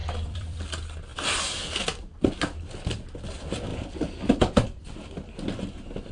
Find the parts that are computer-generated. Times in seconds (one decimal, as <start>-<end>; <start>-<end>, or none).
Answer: 0.0-0.6; 1.1-3.2; 3.7-4.8